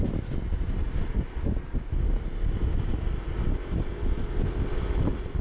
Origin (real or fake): real